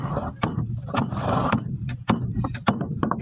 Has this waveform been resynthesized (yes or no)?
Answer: yes